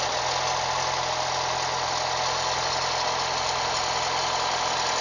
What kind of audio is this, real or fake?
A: real